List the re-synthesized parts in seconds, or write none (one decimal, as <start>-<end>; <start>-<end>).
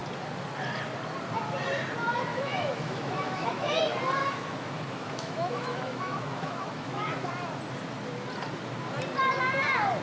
2.3-3.8; 4.2-7.3